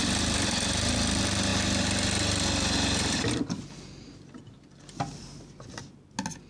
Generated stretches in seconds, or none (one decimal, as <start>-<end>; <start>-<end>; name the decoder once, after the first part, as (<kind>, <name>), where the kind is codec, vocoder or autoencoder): none